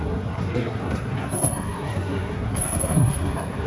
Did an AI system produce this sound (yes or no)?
yes